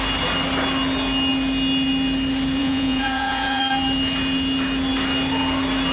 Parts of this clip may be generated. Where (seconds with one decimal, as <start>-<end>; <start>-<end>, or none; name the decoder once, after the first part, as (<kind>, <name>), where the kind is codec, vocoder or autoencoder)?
2.6-3.6 (vocoder, Vocos)